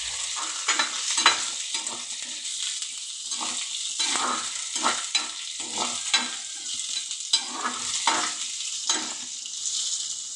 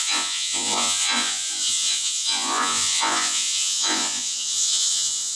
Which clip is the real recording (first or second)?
first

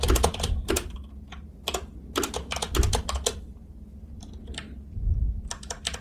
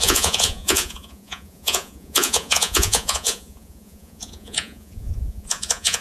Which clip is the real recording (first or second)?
first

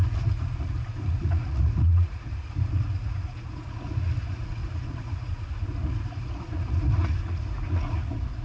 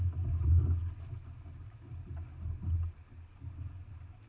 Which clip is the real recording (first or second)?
second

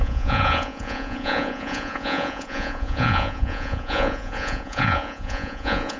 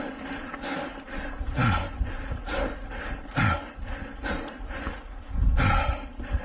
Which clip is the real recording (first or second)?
second